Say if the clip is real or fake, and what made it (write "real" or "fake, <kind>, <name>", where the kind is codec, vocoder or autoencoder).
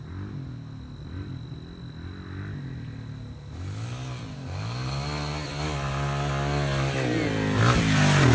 real